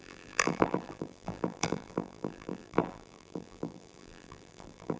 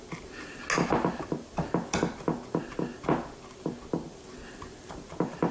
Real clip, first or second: second